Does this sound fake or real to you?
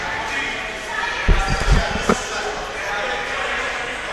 real